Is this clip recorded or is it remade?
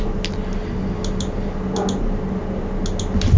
recorded